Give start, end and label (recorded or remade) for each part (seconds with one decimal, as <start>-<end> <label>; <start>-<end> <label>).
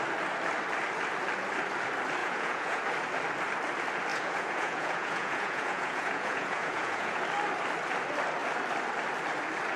0.0-2.2 recorded; 2.2-2.8 remade; 2.8-4.1 recorded; 4.1-7.2 remade; 7.2-9.8 recorded